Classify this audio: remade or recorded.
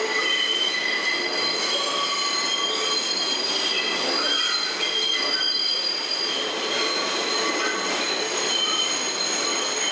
recorded